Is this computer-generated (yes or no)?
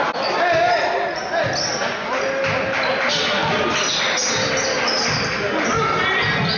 no